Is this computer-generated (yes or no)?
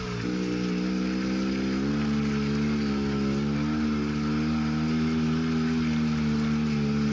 no